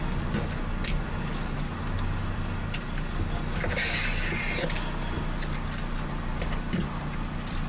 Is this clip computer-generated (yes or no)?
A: no